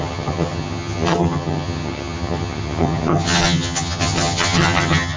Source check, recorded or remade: remade